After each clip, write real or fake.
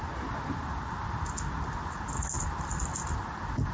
real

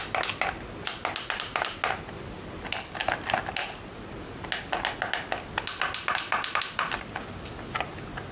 real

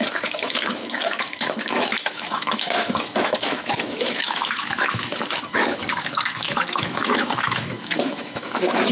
fake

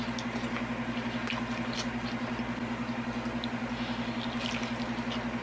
real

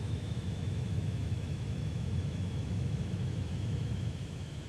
fake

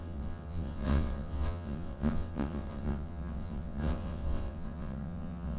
fake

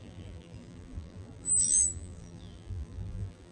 fake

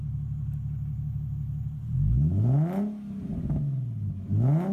real